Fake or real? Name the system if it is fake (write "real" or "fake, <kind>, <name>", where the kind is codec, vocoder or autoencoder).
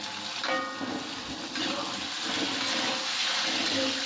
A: real